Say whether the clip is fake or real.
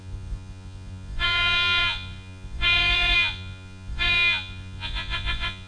fake